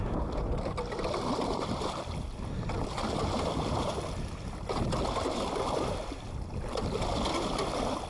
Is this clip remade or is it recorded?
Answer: recorded